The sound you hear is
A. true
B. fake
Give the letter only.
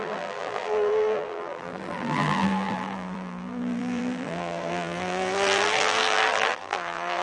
B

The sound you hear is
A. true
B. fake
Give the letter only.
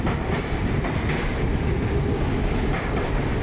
B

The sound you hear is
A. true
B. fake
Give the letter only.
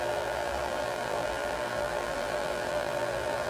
B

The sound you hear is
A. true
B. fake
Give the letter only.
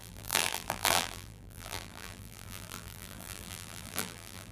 B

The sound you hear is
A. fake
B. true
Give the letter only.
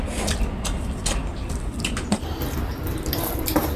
A